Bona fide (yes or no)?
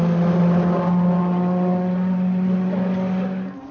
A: yes